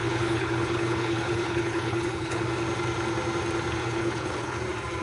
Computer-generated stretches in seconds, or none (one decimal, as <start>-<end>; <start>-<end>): 0.0-2.4; 3.8-4.6